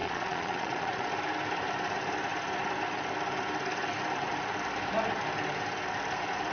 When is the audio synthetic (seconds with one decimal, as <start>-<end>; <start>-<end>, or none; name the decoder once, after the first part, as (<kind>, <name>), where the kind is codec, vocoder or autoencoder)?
0.0-1.1 (vocoder, Vocos)